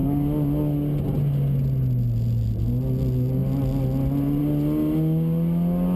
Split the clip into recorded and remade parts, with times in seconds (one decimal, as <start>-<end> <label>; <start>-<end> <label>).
0.0-6.0 recorded